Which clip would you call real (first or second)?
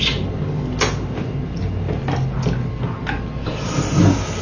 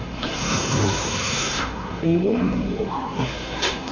first